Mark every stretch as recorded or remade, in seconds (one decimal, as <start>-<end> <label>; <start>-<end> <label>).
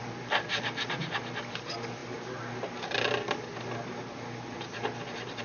0.0-5.4 recorded